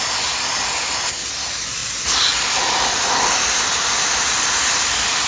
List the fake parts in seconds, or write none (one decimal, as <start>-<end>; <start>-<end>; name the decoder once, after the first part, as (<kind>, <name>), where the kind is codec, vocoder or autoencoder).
none